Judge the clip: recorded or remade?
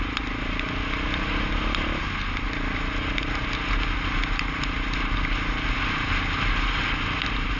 recorded